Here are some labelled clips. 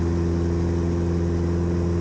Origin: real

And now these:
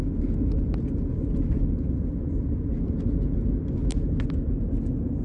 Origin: real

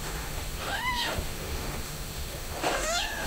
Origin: fake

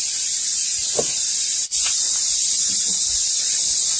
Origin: real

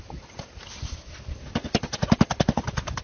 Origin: real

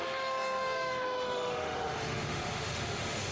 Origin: fake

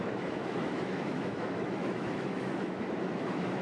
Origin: fake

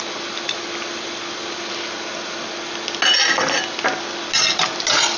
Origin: real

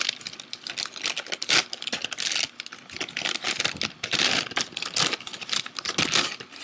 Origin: real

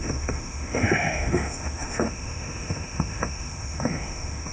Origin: fake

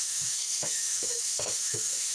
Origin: fake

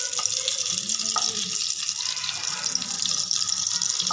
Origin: real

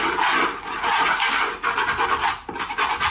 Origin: real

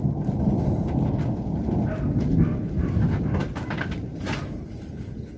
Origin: real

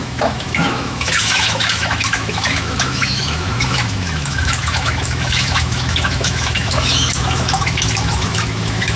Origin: fake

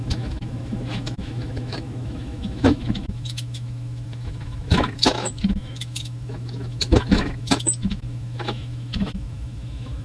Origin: fake